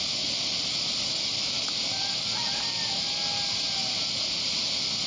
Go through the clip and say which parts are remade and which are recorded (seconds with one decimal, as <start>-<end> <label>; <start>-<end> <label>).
0.0-5.1 recorded